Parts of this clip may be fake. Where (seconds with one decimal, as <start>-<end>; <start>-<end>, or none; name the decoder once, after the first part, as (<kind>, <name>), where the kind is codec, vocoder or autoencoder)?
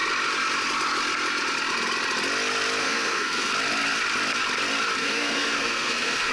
2.8-3.5 (codec, SNAC); 5.0-6.3